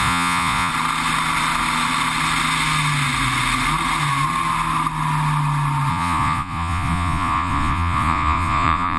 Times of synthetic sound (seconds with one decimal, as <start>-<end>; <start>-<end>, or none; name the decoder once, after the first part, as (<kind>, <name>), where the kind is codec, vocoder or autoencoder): 0.0-0.7 (vocoder, Vocos); 5.9-9.0